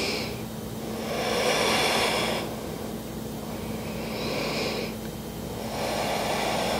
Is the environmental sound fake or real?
real